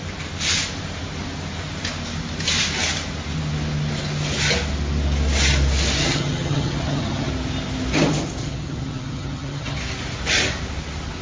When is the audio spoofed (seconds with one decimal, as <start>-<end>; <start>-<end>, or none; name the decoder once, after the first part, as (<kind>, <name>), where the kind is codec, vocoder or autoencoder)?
6.0-7.3 (vocoder, HiFi-GAN); 8.4-9.8